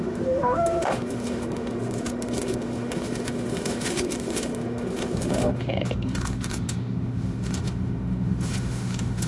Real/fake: fake